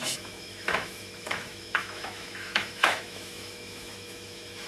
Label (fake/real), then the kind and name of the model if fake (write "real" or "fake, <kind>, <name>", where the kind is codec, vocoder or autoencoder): fake, autoencoder, DAC-VAE